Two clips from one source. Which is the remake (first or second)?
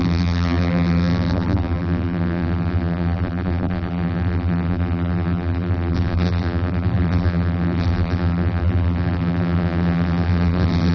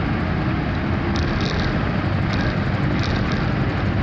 first